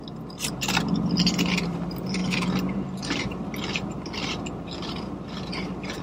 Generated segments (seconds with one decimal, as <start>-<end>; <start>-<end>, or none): none